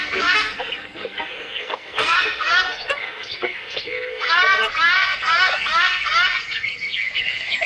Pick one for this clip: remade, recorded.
remade